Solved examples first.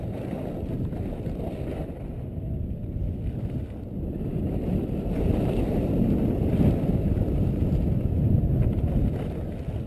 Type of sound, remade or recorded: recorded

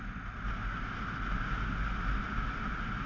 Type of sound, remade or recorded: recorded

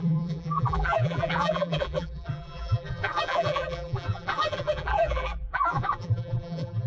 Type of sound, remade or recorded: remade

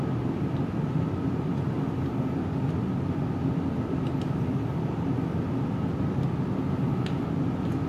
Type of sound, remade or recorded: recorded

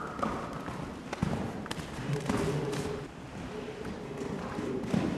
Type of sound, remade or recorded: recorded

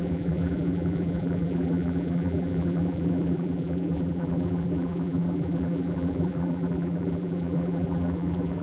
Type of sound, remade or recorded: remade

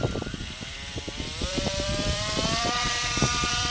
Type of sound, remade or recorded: remade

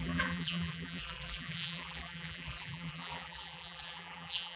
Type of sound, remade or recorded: remade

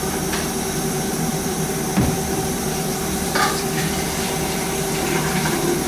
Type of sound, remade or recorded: remade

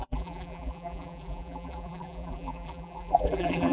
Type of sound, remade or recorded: remade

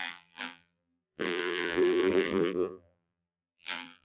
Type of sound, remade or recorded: remade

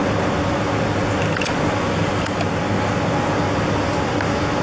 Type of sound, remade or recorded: recorded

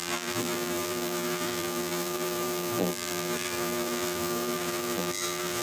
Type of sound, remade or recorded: remade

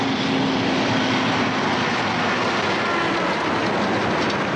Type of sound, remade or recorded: recorded